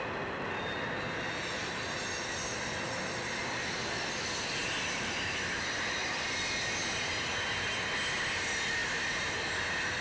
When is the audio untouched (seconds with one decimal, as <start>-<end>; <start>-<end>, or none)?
0.0-10.0